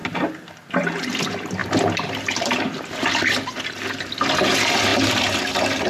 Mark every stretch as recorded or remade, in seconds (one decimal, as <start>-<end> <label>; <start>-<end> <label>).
0.0-4.9 recorded; 4.9-5.4 remade; 5.4-5.9 recorded